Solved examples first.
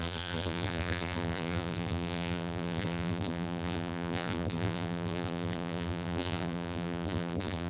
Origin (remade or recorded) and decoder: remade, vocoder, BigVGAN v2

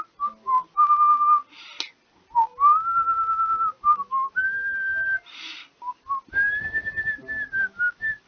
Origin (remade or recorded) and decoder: recorded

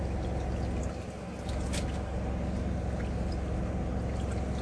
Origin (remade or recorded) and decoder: recorded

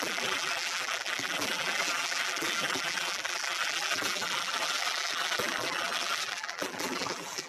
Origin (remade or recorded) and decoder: remade, vocoder, BigVGAN v2